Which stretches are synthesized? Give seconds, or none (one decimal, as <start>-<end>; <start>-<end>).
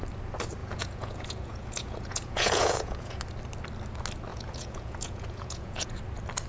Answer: 0.6-3.2; 4.3-6.0